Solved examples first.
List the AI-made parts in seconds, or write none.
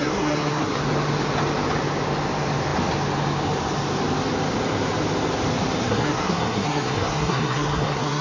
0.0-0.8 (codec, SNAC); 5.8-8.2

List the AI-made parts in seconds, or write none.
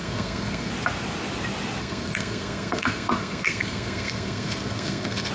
0.0-0.7 (codec, SNAC); 1.8-5.3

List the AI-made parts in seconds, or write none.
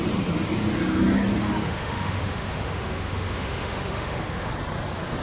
1.4-4.5 (autoencoder, DAC-VAE)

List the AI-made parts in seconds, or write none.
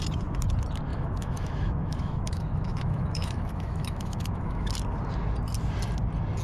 0.9-4.7 (autoencoder, DAC-VAE)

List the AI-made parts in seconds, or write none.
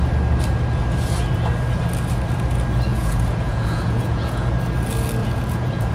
2.9-4.5 (vocoder, Vocos); 5.2-5.9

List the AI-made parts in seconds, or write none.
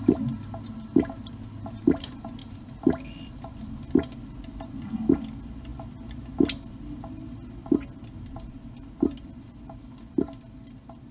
none